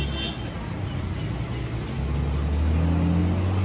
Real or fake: real